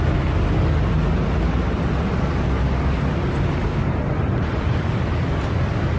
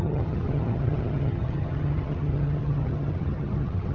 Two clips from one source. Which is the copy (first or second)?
second